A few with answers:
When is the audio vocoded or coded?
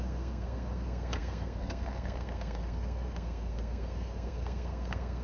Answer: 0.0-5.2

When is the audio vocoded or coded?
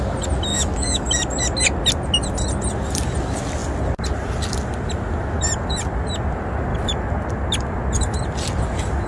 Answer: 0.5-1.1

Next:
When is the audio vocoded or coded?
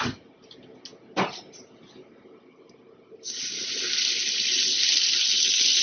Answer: none